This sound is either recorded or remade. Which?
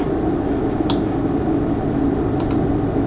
recorded